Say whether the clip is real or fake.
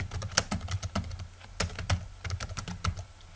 real